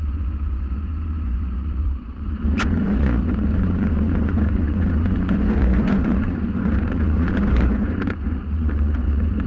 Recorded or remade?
remade